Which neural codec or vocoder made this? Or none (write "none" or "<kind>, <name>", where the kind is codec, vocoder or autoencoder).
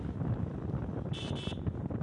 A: none